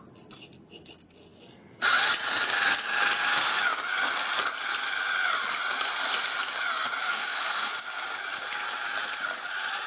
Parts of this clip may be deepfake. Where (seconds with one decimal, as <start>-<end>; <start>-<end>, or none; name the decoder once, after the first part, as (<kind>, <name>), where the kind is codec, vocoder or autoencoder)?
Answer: 7.0-7.7 (autoencoder, DAC-VAE)